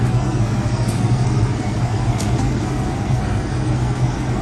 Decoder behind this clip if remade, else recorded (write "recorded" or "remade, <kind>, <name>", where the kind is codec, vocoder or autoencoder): remade, codec, SNAC